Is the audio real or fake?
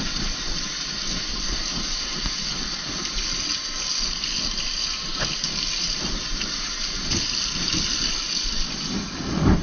real